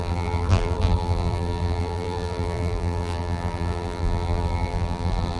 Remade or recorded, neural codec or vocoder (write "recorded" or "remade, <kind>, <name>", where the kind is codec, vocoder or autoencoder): remade, vocoder, BigVGAN v2